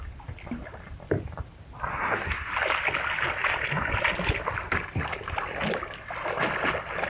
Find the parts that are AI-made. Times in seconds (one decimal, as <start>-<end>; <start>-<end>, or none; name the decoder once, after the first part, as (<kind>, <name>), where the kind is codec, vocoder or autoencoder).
1.9-2.5 (codec, SNAC)